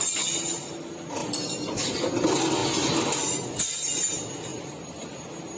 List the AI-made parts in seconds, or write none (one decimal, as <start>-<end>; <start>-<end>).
1.2-1.9; 4.5-5.6